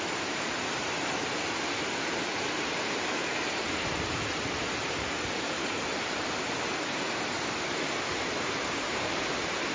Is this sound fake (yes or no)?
yes